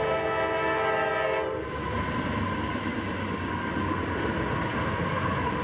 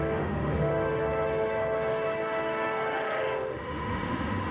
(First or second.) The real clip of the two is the first